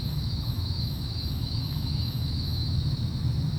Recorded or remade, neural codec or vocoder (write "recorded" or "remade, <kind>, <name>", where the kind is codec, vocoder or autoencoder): remade, autoencoder, DAC-VAE